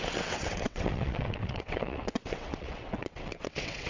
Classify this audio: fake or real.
fake